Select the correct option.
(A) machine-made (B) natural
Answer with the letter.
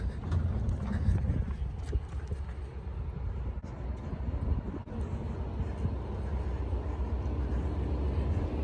B